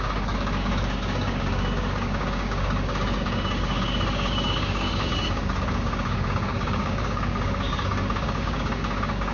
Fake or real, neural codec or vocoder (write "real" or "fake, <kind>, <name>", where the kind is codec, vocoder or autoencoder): fake, codec, DAC